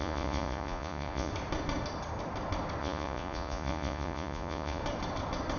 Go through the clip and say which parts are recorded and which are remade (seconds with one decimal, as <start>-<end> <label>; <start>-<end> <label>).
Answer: 0.0-1.3 remade; 1.3-2.8 recorded; 2.8-4.8 remade; 4.8-5.6 recorded